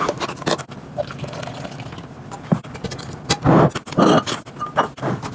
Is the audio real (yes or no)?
yes